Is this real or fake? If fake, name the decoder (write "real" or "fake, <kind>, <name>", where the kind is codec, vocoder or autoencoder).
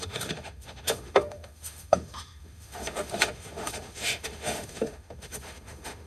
fake, autoencoder, DAC-VAE